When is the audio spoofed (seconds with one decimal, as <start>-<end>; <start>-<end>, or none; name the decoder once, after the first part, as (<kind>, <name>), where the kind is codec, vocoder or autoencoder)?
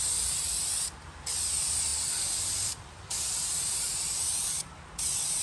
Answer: none